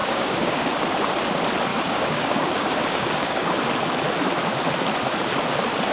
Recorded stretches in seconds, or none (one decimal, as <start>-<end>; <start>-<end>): 0.7-1.7; 3.5-5.9